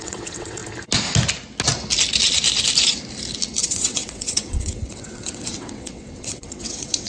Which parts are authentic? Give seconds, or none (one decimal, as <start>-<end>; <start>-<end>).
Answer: 0.6-3.6